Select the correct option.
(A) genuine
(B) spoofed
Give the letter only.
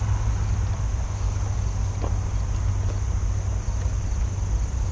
A